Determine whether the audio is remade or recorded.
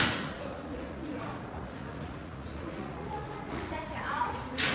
remade